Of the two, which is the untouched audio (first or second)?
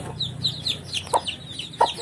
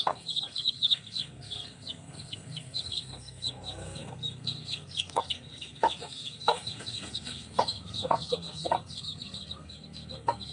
first